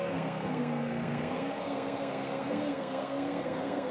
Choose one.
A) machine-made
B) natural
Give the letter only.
A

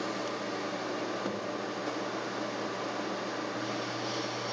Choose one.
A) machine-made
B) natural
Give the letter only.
B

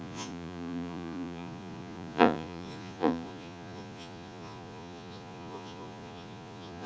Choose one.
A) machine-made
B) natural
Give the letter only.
A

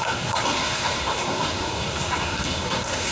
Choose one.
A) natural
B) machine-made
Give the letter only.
B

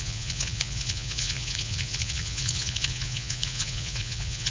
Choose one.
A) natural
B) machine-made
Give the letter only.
B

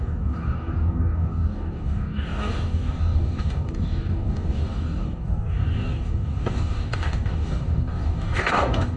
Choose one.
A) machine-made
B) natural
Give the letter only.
A